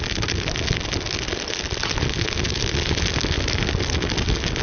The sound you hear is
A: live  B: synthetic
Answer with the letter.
A